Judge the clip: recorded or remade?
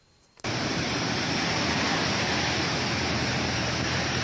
remade